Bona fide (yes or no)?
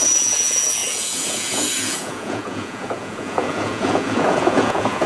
no